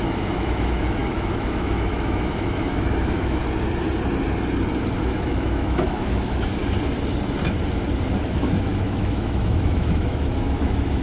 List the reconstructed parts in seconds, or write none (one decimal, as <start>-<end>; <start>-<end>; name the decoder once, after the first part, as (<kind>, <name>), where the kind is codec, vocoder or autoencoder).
0.0-3.4 (autoencoder, DAC-VAE); 5.0-6.6; 8.2-11.0